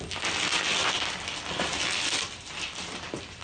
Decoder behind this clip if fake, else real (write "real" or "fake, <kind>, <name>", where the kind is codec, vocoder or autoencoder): real